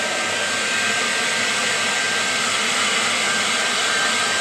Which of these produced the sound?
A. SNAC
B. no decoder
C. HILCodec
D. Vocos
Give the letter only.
B